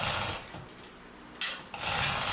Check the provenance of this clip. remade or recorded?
recorded